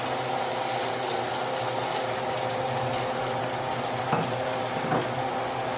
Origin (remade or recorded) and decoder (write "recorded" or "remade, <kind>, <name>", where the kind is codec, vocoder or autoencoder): recorded